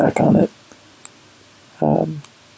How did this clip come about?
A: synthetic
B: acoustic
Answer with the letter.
B